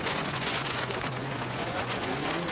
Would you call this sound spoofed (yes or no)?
yes